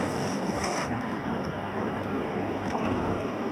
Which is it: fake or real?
fake